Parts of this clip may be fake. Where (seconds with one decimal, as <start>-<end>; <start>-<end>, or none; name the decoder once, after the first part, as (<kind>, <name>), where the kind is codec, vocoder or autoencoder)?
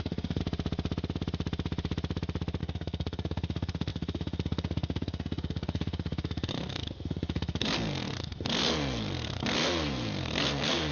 0.0-0.4 (codec, SNAC); 2.6-10.9